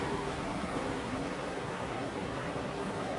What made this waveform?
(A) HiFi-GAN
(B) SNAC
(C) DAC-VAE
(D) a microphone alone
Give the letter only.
B